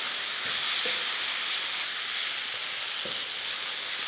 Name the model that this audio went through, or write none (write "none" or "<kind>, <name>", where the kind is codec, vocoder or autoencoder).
none